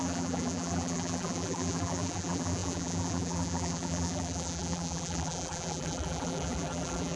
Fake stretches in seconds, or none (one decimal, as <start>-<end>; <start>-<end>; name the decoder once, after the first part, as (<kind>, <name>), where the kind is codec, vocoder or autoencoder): 0.0-7.2 (vocoder, BigVGAN v2)